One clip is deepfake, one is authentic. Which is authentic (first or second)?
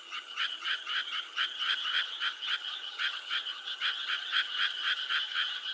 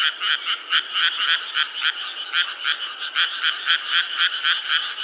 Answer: second